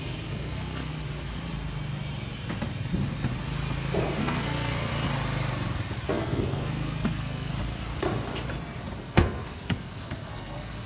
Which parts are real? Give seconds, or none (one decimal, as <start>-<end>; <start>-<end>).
0.9-4.2; 4.9-6.1; 7.5-9.0